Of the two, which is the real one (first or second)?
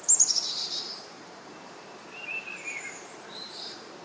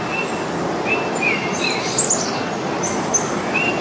second